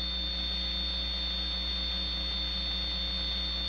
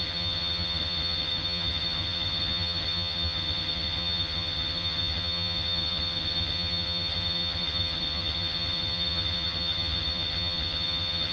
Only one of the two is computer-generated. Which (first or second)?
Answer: second